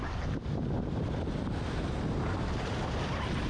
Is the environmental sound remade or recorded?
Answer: recorded